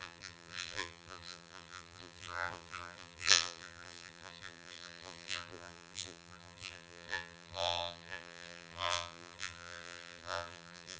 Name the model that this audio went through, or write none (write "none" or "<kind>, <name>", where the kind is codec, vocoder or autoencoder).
vocoder, BigVGAN v2